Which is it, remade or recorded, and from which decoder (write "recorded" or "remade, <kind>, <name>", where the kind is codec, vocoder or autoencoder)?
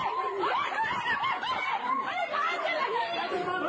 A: recorded